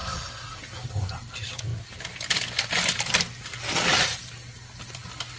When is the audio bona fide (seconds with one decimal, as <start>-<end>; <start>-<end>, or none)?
1.7-4.9